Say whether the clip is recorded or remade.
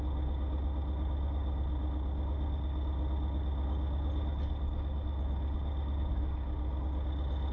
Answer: recorded